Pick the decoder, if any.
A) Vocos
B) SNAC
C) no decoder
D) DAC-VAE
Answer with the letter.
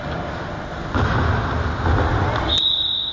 C